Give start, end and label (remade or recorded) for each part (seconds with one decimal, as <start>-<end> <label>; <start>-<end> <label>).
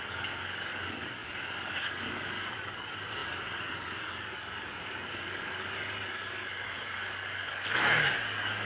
0.0-8.6 remade